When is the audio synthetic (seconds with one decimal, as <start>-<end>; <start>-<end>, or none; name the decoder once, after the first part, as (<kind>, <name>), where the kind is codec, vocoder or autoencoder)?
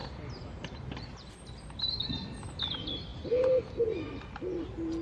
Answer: 0.0-1.3 (vocoder, BigVGAN v2); 3.1-3.8